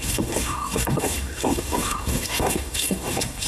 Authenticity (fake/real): fake